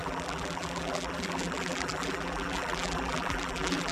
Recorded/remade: remade